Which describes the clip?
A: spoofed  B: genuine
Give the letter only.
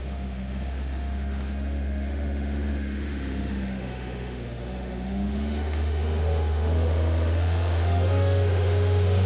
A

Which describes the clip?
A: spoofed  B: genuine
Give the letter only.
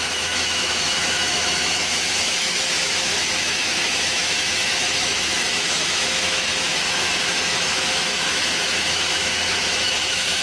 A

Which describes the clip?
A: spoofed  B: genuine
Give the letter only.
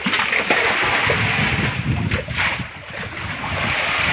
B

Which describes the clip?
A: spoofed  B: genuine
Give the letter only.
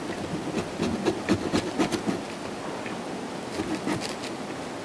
B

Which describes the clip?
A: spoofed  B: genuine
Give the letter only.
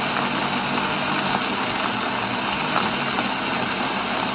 B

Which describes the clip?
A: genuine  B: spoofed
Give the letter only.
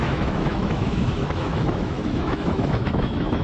B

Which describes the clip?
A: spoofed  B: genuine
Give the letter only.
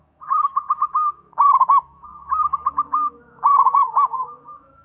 A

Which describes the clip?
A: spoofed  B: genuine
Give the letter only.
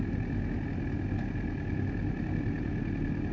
B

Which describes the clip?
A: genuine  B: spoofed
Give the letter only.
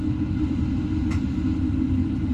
A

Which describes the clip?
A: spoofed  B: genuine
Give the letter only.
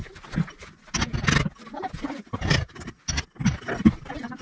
B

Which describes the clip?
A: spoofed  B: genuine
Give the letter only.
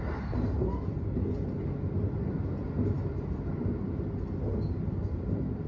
B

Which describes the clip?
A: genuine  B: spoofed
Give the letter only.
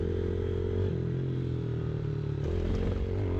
A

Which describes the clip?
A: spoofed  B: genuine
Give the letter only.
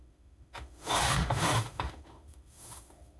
A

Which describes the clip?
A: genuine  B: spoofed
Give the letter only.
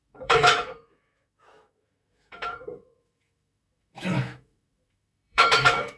B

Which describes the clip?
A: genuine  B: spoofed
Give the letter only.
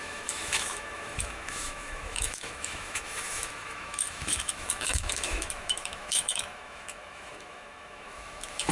B